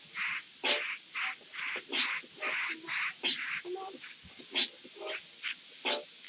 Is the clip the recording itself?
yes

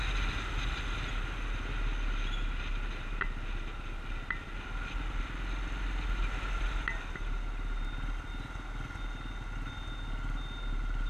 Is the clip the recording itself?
yes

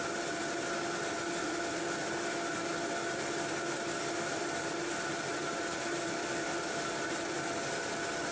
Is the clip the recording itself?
yes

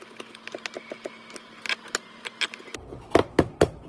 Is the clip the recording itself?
yes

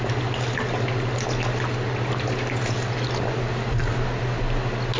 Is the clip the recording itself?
yes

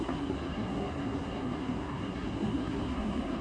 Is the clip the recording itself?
no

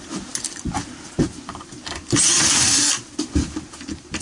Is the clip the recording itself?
yes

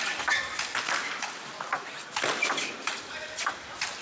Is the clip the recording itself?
yes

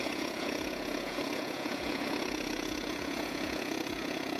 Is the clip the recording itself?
no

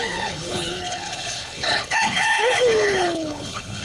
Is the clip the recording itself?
no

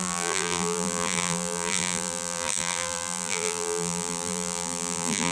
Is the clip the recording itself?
no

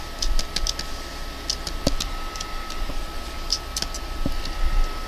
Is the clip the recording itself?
yes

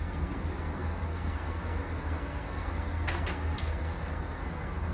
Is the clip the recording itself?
no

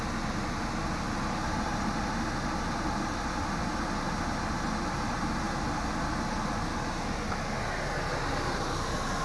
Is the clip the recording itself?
yes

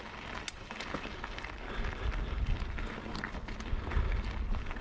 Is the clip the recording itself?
yes